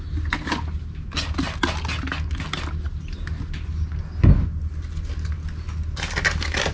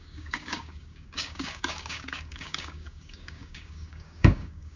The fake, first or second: second